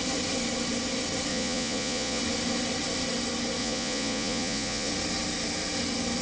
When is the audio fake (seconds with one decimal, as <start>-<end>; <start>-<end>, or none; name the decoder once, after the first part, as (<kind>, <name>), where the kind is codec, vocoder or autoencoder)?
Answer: 1.3-2.2 (vocoder, Vocos); 3.6-4.9